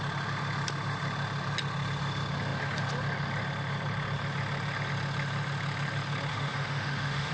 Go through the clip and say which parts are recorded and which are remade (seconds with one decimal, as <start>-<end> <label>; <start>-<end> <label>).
0.0-6.3 recorded; 6.3-7.3 remade